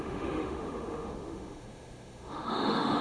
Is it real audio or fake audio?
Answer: fake